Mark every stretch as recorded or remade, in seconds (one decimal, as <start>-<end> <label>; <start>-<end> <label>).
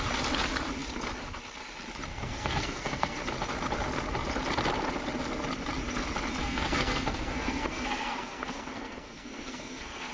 0.0-2.1 recorded; 2.1-3.2 remade; 3.2-6.4 recorded; 6.4-10.1 remade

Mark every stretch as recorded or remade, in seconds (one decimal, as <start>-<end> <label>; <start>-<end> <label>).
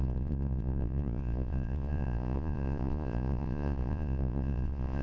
0.0-5.0 remade